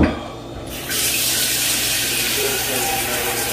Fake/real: fake